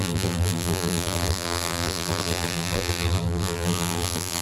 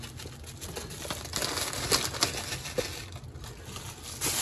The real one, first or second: second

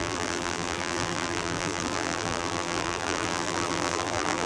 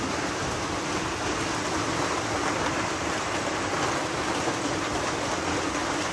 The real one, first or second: second